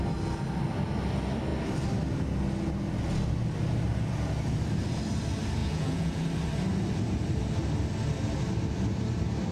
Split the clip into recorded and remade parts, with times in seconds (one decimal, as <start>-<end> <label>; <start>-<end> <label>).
0.0-5.6 recorded; 5.6-6.2 remade; 6.2-9.5 recorded